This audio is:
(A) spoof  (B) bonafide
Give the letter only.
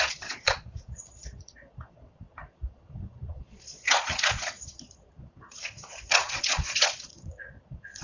A